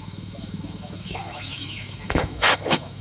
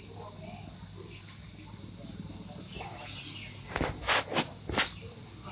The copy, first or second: first